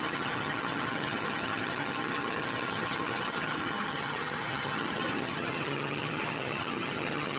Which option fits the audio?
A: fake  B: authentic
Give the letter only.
A